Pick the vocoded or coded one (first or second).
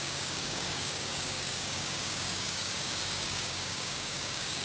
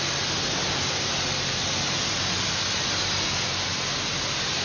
first